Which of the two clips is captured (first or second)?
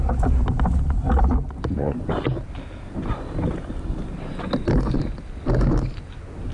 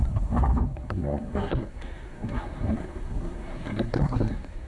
first